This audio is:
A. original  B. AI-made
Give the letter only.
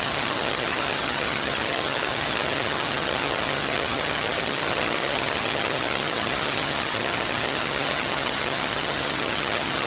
B